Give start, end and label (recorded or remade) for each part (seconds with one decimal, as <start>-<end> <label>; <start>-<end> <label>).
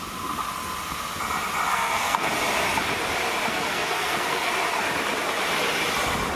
0.0-1.7 recorded; 1.7-2.3 remade; 2.3-3.5 recorded; 3.5-4.5 remade; 4.5-6.4 recorded